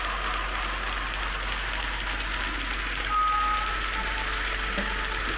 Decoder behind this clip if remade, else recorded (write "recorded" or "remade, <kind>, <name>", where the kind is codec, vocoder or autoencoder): recorded